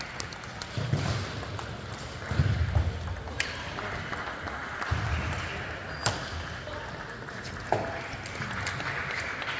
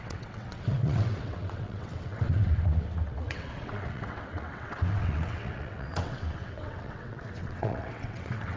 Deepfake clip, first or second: second